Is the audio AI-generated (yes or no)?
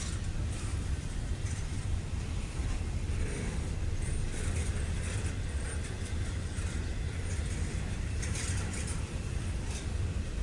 yes